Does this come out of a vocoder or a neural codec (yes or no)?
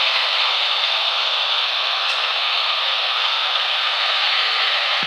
yes